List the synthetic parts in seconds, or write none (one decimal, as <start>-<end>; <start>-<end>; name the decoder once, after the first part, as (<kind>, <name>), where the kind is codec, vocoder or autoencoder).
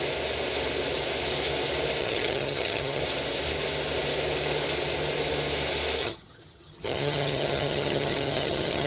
2.0-3.0 (vocoder, HiFi-GAN); 6.0-8.9